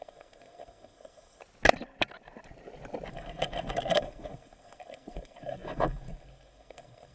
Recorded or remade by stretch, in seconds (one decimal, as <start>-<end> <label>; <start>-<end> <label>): 0.0-1.4 remade; 1.4-3.1 recorded; 3.1-7.1 remade